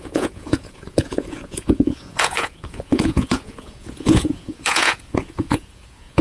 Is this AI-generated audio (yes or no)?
yes